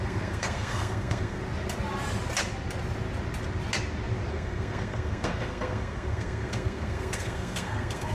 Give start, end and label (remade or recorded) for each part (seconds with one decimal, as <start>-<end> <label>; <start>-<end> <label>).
0.0-1.4 remade; 1.4-4.3 recorded; 4.3-8.1 remade